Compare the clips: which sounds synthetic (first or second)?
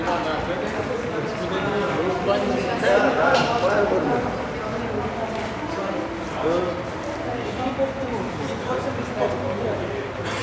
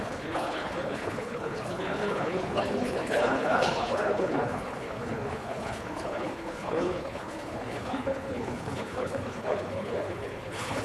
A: second